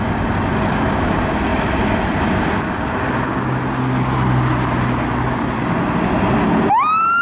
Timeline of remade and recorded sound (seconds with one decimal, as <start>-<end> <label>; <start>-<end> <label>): 0.0-7.2 recorded